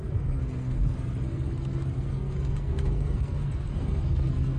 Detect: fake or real fake